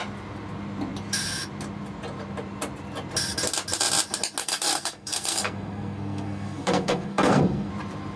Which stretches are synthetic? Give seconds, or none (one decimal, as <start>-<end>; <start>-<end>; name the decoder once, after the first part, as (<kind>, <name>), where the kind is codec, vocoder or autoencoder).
4.4-7.7 (codec, SNAC)